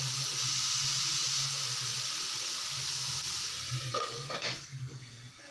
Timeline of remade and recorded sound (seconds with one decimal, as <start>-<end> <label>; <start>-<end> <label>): 0.0-3.9 recorded; 3.9-5.5 remade